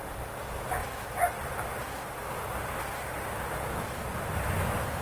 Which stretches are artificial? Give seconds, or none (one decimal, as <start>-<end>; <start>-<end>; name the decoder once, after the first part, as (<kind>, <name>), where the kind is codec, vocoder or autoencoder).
0.8-1.4 (vocoder, BigVGAN v2); 1.8-3.6